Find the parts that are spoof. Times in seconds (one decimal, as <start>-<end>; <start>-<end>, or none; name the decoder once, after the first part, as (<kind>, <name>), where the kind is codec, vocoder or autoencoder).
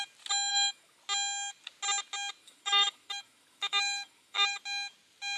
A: 0.5-1.0 (autoencoder, DAC-VAE); 2.4-4.6